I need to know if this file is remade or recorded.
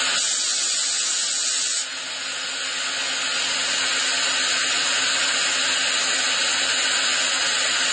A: recorded